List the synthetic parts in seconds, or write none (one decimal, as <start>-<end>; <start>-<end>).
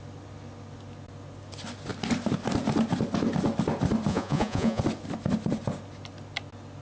4.1-4.8